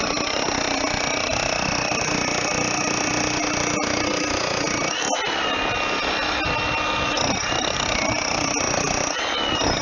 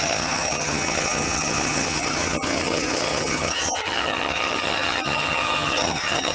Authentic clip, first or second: first